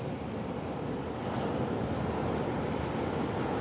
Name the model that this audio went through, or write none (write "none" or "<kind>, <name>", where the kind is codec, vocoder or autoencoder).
none